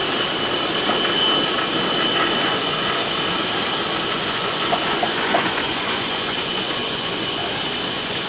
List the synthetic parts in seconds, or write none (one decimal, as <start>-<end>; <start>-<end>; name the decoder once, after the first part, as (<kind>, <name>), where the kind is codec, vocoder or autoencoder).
2.2-3.0 (vocoder, Vocos); 4.1-7.4; 7.9-8.3